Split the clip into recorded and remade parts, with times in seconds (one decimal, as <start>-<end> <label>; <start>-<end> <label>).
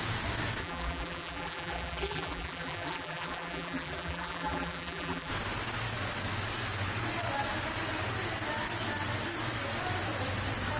0.0-0.6 recorded; 0.6-5.3 remade; 5.3-10.8 recorded